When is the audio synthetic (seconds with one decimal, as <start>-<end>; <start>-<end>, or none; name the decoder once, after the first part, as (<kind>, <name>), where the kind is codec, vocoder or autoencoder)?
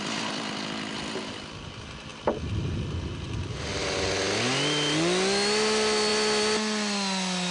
none